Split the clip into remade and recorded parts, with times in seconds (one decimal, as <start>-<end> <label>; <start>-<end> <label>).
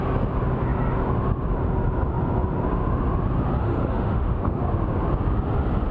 0.0-3.6 recorded; 3.6-4.6 remade; 4.6-5.9 recorded